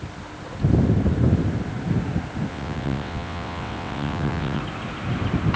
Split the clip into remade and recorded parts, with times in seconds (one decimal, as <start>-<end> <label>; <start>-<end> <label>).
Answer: 0.0-2.5 recorded; 2.5-4.6 remade; 4.6-5.6 recorded